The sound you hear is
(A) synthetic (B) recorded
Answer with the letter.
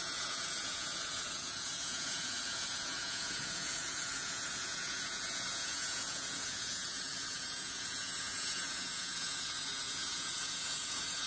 A